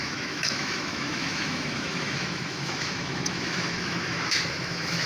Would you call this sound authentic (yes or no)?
no